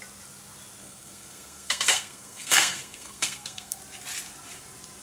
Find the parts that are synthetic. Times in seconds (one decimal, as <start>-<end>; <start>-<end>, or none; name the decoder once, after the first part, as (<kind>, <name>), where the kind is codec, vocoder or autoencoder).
0.8-3.8 (codec, SNAC)